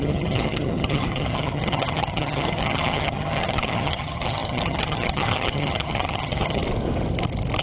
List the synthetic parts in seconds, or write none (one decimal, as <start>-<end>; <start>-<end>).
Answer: 0.0-6.6

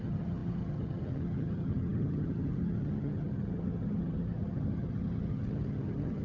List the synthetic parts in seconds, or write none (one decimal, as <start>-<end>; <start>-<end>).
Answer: 0.0-6.2